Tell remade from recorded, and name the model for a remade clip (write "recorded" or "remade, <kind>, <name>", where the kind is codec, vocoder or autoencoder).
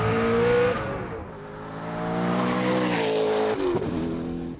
recorded